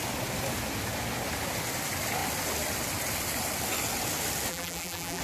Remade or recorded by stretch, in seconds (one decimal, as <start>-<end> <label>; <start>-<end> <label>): 0.0-4.5 recorded; 4.5-5.2 remade